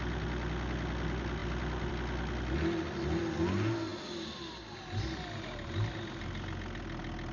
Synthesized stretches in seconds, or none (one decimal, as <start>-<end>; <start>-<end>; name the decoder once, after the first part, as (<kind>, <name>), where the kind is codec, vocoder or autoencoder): none